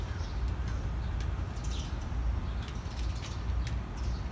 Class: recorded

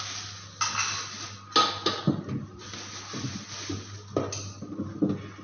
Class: recorded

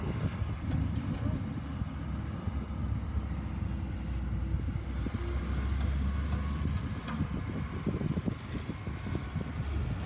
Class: recorded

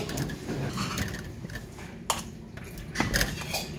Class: recorded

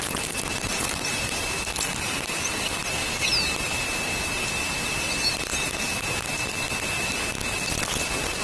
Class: recorded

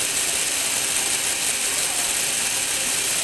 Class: recorded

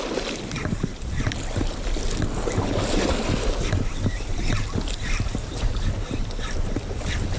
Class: recorded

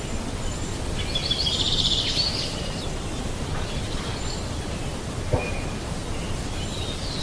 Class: recorded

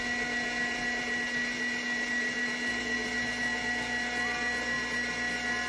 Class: recorded